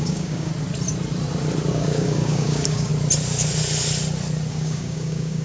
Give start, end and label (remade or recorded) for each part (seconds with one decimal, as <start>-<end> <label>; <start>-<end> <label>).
0.0-0.5 remade; 0.5-1.7 recorded; 1.7-2.9 remade; 2.9-4.5 recorded; 4.5-5.4 remade

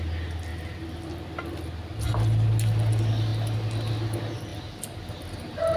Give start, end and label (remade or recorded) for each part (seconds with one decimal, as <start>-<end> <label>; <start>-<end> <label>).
0.0-0.5 recorded; 0.5-1.6 remade; 1.6-5.8 recorded